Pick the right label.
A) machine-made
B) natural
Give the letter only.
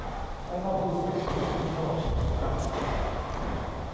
B